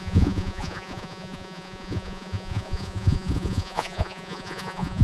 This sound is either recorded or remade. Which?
remade